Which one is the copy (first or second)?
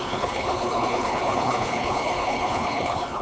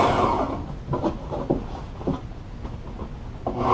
first